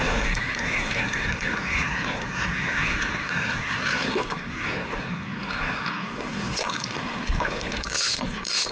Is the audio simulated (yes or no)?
yes